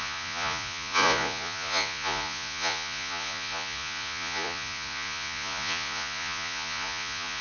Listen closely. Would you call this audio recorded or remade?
remade